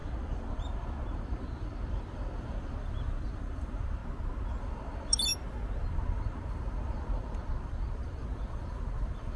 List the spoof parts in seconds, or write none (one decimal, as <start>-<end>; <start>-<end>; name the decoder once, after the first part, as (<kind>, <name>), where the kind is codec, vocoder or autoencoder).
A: 0.0-4.0 (vocoder, BigVGAN v2); 4.6-5.3; 5.9-9.4